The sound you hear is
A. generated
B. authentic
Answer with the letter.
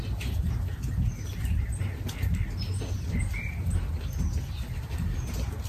B